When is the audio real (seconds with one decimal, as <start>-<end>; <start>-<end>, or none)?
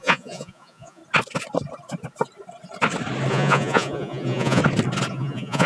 1.0-3.3; 4.6-5.1